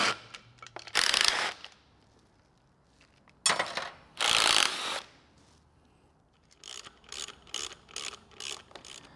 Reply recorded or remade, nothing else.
recorded